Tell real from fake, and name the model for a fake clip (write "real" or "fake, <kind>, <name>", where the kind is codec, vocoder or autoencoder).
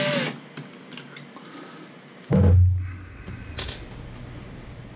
real